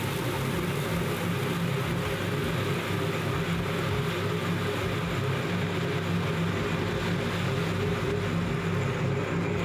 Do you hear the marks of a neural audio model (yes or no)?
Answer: no